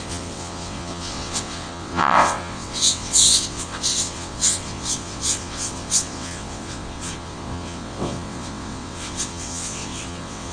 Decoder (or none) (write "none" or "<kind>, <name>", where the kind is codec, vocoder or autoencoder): vocoder, WaveNeXt